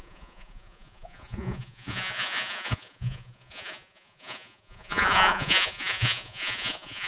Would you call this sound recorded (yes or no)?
no